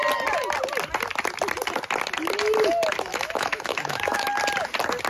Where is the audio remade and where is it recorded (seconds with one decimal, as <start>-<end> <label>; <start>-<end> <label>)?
0.0-3.1 recorded; 3.1-4.3 remade; 4.3-5.1 recorded